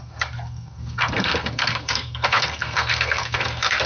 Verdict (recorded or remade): remade